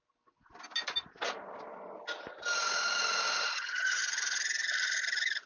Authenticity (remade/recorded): recorded